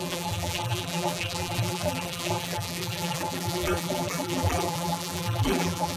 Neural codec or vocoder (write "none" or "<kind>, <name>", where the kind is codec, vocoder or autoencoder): vocoder, BigVGAN v2